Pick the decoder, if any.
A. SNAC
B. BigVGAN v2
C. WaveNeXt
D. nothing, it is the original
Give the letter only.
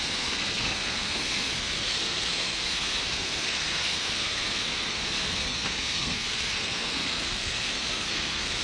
A